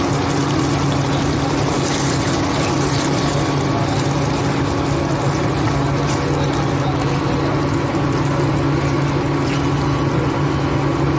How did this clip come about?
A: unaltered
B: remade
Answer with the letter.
A